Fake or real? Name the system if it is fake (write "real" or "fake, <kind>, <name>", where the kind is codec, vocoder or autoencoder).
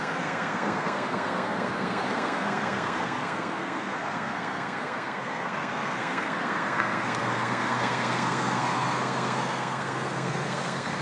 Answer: fake, codec, SNAC